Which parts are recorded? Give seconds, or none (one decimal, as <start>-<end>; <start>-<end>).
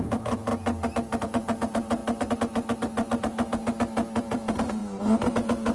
0.5-1.2; 2.0-3.2; 3.6-4.2; 4.8-5.3